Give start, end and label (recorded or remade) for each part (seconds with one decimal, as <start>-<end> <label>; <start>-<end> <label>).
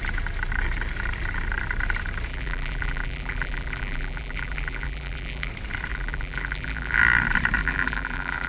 0.0-2.3 recorded; 2.3-5.5 remade; 5.5-5.9 recorded; 5.9-7.0 remade; 7.0-7.6 recorded; 7.6-8.5 remade